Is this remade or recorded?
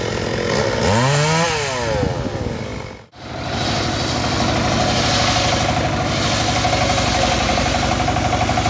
recorded